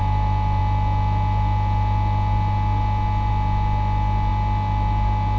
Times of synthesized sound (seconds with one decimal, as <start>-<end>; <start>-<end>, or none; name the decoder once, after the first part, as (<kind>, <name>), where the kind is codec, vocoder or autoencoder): none